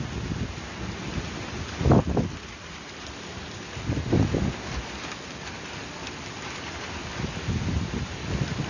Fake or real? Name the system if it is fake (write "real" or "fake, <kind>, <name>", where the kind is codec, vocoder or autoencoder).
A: real